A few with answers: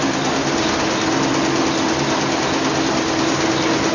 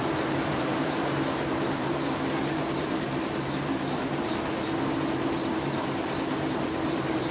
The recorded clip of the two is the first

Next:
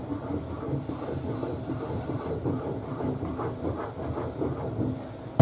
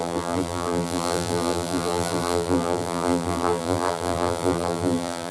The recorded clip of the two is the first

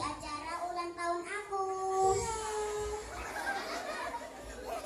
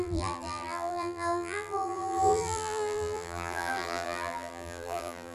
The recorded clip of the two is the first